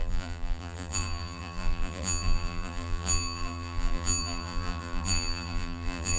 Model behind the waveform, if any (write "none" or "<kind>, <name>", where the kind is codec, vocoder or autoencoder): vocoder, BigVGAN v2